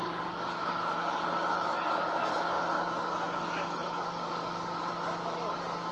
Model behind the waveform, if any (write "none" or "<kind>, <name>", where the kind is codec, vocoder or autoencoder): codec, DAC